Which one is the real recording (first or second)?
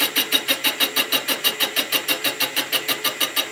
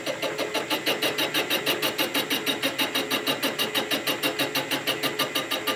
second